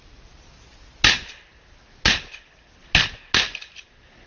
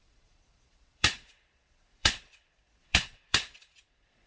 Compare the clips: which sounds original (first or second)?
first